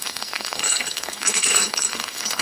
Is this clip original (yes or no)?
no